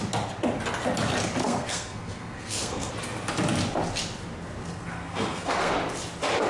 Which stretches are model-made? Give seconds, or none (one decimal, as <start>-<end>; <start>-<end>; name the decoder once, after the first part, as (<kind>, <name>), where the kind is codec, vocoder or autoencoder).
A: 1.4-2.9 (codec, SNAC); 4.6-5.7